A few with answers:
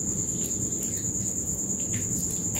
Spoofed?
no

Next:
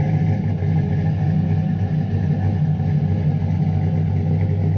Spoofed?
no